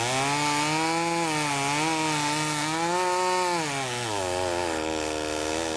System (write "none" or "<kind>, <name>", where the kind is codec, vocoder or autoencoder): none